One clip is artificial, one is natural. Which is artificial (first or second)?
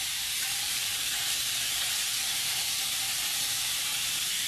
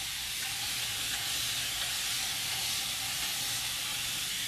first